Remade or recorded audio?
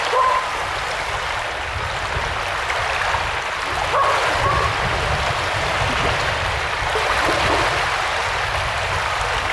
recorded